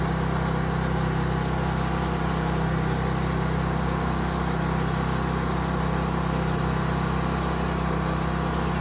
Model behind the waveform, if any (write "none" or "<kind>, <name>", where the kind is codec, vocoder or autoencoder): none